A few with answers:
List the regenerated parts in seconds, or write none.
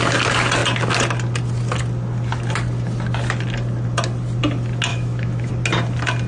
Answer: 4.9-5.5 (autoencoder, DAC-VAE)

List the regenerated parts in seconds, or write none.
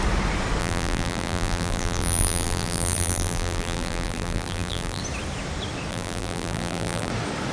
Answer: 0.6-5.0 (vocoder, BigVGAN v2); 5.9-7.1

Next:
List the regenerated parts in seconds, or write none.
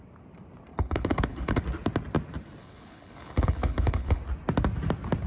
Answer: 0.7-1.6 (codec, HILCodec); 2.6-4.2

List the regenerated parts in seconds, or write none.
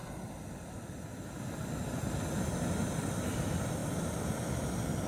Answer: none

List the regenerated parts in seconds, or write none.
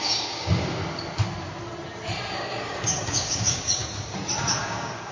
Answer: 0.0-0.8 (codec, DAC); 2.3-3.8; 4.6-5.1